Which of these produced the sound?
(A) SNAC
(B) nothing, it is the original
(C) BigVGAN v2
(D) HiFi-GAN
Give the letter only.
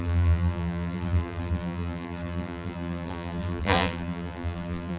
C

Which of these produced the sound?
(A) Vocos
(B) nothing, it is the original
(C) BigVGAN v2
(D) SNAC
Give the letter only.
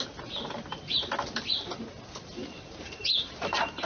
B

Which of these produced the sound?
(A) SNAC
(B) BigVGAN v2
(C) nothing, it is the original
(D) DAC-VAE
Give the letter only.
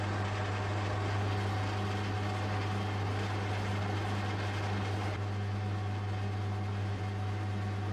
C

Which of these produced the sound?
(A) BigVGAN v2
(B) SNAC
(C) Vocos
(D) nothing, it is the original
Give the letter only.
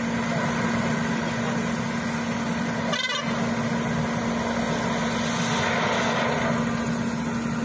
D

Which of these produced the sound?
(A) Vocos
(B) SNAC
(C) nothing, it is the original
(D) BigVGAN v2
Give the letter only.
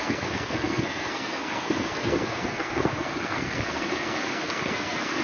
B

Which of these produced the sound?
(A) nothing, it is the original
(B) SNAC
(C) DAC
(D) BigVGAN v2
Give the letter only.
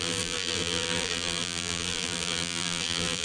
D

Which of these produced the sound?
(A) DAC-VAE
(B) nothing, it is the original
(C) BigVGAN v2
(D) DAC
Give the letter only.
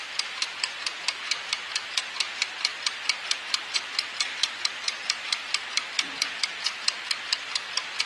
C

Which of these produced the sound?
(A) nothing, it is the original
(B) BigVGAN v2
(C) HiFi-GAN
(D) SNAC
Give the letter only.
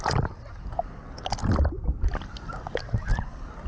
A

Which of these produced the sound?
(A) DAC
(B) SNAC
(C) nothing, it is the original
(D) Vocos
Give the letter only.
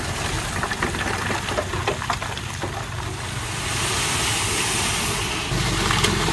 C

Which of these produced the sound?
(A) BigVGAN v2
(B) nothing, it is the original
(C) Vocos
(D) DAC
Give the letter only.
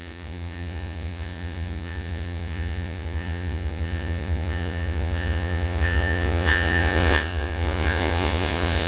C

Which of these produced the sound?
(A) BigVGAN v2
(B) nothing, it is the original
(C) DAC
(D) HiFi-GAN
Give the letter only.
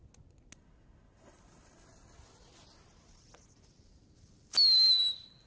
B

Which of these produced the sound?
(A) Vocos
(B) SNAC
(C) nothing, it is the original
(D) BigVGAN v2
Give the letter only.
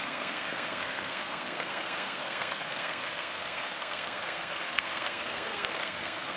B